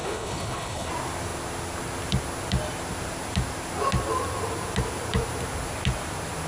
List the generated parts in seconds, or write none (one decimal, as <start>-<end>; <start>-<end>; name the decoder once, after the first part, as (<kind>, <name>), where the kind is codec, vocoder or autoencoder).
0.0-0.9 (codec, HILCodec)